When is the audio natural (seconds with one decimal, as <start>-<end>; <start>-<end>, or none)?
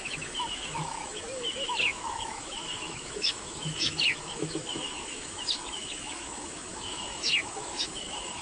none